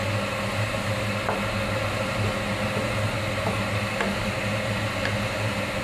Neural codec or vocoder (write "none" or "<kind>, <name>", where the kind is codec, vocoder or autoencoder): none